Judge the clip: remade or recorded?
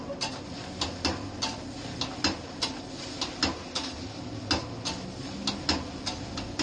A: recorded